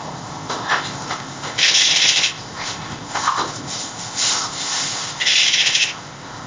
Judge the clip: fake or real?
fake